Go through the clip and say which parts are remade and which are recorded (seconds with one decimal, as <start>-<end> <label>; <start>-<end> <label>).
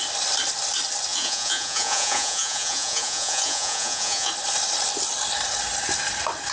0.0-1.1 recorded; 1.1-4.3 remade; 4.3-6.5 recorded